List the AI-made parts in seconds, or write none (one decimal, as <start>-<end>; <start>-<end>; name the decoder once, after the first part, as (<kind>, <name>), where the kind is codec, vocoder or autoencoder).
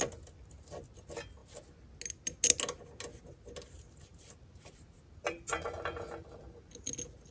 4.1-6.4 (vocoder, BigVGAN v2)